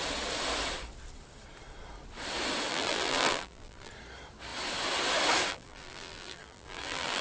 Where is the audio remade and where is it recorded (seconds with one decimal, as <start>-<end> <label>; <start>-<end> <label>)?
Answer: 0.0-2.7 recorded; 2.7-3.9 remade; 3.9-5.5 recorded; 5.5-7.2 remade